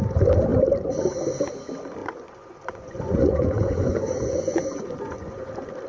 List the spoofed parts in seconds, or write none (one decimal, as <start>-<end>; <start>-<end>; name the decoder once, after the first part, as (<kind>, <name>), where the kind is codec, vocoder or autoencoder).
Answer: 2.0-5.5 (vocoder, Vocos)